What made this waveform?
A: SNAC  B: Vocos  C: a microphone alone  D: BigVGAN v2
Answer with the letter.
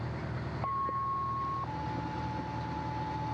C